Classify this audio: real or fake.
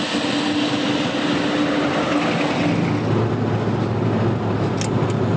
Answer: real